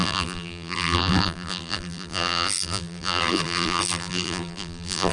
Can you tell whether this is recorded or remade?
remade